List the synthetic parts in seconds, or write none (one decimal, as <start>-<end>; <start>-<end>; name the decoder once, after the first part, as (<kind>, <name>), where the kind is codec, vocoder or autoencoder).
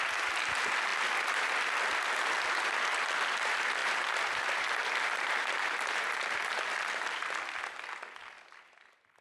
none